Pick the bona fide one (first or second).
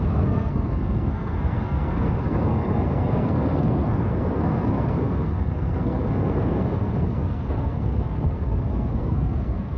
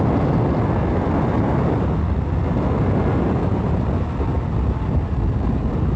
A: second